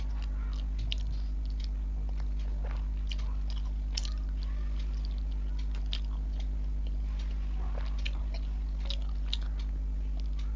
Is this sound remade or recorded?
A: recorded